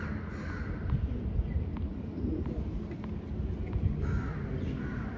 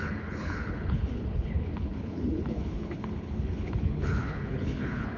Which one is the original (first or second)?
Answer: first